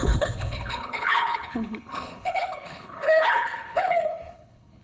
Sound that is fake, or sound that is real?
fake